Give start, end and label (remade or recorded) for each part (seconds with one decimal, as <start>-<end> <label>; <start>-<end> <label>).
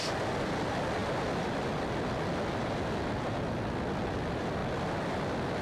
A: 0.0-5.6 recorded